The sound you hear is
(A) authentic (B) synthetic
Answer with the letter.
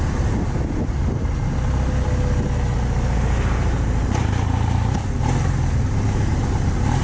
A